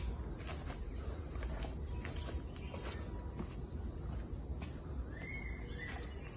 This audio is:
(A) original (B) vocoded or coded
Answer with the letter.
A